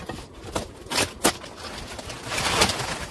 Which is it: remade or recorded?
recorded